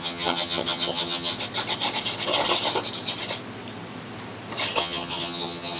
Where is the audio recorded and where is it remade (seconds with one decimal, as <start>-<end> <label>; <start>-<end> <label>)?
0.0-1.3 remade; 1.3-4.8 recorded; 4.8-5.8 remade